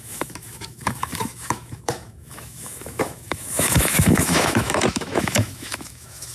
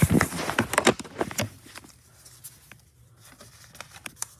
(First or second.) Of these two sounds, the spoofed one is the first